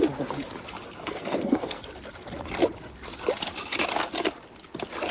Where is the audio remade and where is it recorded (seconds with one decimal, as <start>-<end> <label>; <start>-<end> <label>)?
0.0-1.0 recorded; 1.0-1.8 remade; 1.8-5.1 recorded